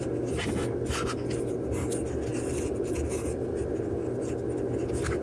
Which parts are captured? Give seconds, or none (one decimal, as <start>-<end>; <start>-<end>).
0.0-2.3; 3.7-5.2